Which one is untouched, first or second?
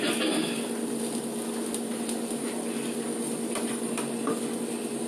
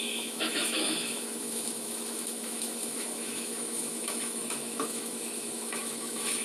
first